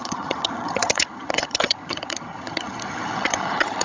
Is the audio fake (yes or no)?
yes